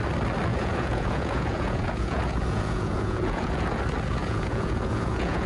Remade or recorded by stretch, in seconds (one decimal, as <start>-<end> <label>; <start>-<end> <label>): 0.0-0.5 recorded; 0.5-3.8 remade; 3.8-4.2 recorded; 4.2-5.5 remade